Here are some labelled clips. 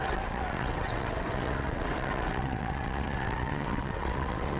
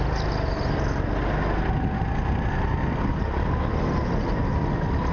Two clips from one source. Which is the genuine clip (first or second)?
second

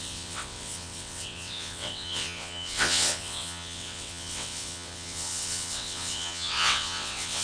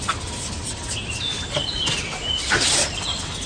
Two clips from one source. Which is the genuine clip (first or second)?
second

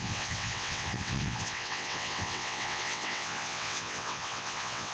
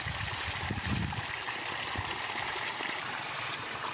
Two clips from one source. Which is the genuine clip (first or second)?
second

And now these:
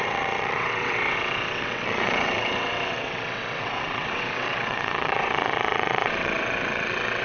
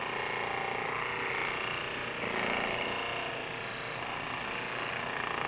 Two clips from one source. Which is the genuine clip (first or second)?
second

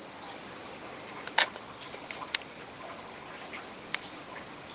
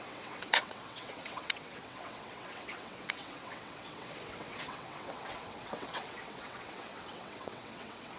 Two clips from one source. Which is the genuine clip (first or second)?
first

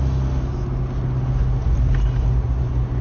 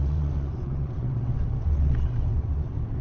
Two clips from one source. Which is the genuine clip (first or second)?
first